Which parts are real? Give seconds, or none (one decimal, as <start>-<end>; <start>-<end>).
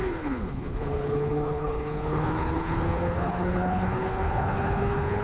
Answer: none